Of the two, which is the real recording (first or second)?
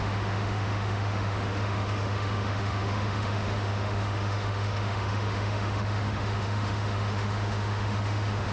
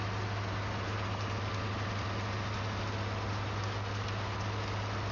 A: second